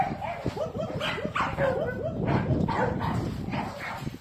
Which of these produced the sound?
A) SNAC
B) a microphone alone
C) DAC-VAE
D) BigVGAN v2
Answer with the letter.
B